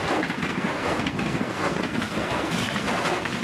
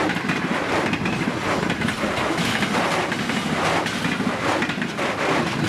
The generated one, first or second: first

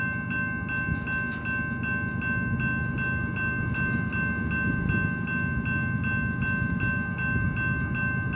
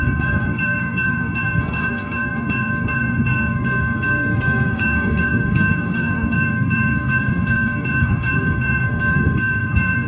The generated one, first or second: second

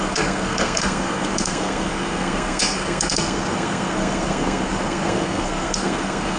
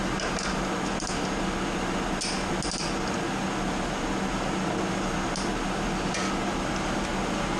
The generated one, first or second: first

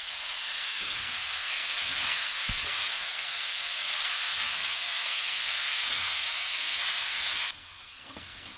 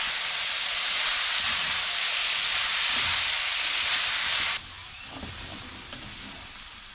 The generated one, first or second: first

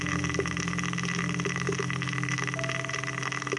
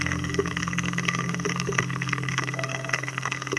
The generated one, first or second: second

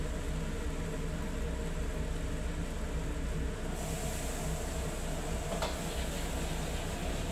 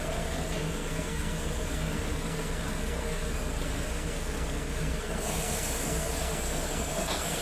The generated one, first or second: second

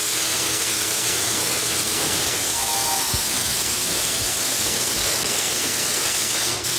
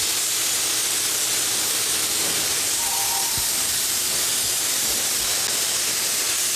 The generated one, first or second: first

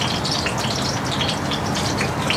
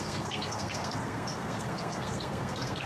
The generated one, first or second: second